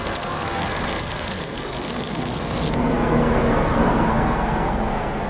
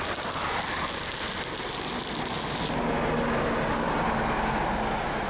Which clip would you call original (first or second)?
second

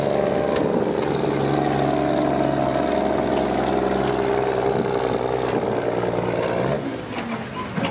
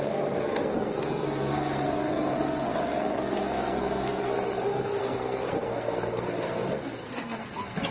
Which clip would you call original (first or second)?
first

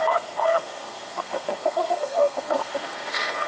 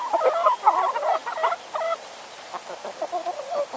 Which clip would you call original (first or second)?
second